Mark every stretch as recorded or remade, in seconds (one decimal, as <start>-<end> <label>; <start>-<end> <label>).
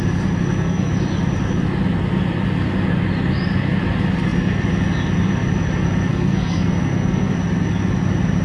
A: 0.0-0.4 recorded; 0.4-0.9 remade; 0.9-6.1 recorded; 6.1-7.3 remade; 7.3-8.4 recorded